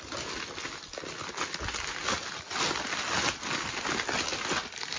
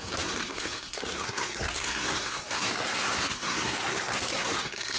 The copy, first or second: second